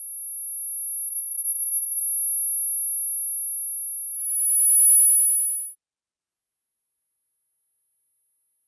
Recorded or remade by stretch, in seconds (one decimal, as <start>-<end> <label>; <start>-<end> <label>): 0.0-1.1 recorded; 1.1-2.0 remade; 2.0-8.7 recorded